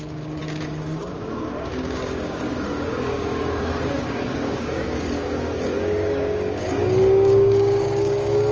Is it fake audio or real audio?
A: fake